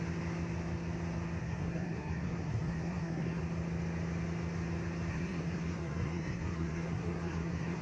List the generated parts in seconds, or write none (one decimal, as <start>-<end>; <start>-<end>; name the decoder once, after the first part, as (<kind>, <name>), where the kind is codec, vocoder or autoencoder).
1.4-3.4 (codec, SNAC); 5.1-7.8